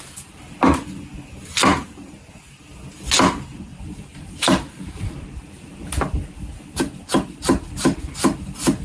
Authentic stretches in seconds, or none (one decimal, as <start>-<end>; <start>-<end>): 0.0-3.7; 5.0-8.8

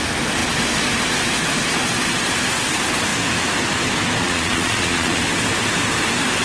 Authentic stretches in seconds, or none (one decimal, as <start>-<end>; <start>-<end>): 0.0-4.2; 5.2-6.4

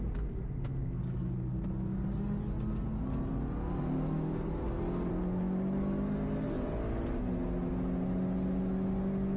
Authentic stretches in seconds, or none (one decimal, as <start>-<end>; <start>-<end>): 0.0-9.4

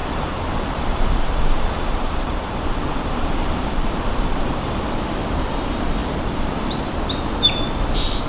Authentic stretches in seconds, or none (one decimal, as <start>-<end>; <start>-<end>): 4.8-6.0; 6.9-8.3

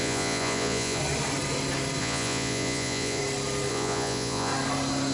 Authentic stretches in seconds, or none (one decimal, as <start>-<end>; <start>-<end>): 1.0-2.0; 3.2-3.7; 4.5-5.1